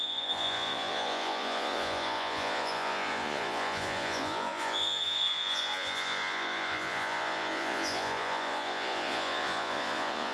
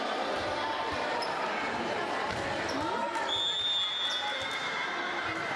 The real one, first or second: second